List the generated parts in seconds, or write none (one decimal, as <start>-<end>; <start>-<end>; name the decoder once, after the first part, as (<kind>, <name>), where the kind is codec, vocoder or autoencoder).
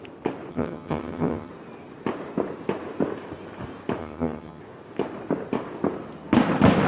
0.5-1.5 (vocoder, HiFi-GAN); 4.0-4.6